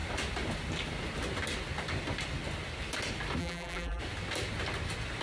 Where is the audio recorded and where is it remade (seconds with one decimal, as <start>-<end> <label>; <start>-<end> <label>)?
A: 0.0-3.4 recorded; 3.4-4.0 remade; 4.0-5.2 recorded